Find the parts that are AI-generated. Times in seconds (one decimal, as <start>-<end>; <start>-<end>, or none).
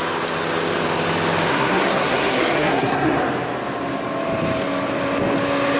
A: 1.5-3.2